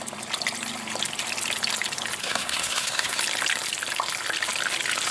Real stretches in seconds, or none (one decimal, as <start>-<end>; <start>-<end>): 0.0-2.2; 3.2-5.1